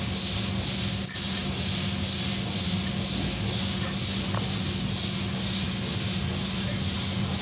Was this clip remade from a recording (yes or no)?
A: no